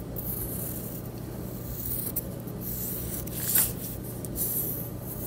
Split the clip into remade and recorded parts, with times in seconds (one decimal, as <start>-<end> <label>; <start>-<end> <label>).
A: 0.0-5.3 recorded